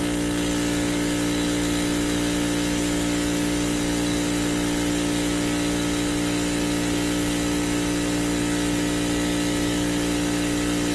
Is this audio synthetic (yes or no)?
no